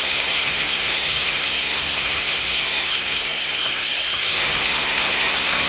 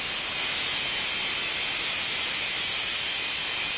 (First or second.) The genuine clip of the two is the second